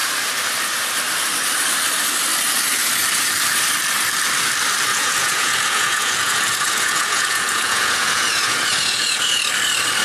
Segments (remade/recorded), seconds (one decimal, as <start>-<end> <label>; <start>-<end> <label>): 0.0-4.9 recorded; 4.9-9.4 remade; 9.4-10.0 recorded